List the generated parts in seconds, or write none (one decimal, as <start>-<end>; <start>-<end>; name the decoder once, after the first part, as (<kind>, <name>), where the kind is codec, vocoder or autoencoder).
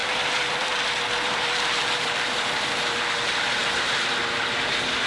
0.0-3.1 (vocoder, BigVGAN v2)